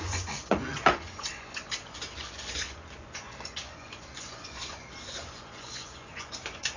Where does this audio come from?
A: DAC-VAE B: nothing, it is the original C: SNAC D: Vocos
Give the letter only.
D